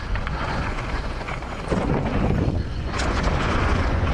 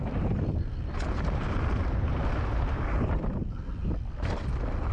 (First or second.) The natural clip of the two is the second